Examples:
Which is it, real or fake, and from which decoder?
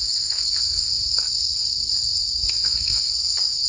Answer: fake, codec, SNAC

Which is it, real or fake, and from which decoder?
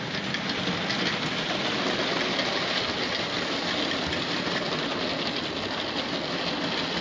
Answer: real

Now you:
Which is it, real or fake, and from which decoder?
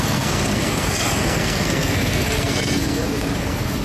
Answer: fake, codec, SNAC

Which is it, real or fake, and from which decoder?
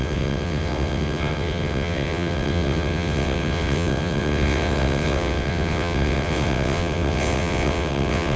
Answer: fake, vocoder, WaveNeXt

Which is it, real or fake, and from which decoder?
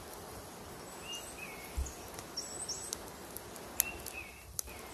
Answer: real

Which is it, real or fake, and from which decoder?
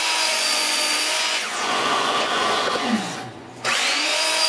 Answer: fake, vocoder, Vocos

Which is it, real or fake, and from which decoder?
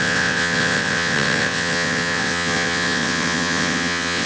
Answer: fake, vocoder, WaveNeXt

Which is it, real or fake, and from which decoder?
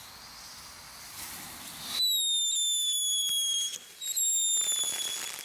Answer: real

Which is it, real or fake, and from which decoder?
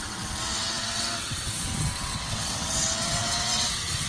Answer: fake, vocoder, WaveNeXt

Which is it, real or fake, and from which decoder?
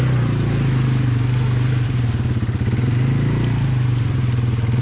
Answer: real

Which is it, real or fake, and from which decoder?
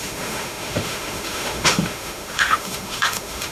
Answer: fake, autoencoder, DAC-VAE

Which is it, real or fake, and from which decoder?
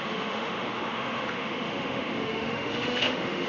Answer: fake, autoencoder, DAC-VAE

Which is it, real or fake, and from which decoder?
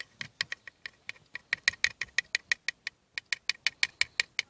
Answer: real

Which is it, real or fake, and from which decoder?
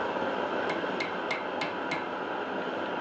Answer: real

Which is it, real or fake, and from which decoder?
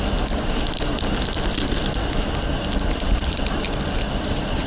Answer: real